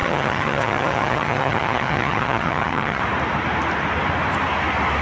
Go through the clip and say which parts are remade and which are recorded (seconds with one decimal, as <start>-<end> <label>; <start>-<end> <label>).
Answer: 0.0-3.0 remade; 3.0-5.0 recorded